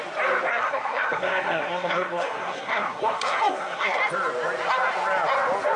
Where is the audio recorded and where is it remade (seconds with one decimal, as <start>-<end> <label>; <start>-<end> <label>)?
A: 0.0-0.5 recorded; 0.5-4.0 remade; 4.0-5.8 recorded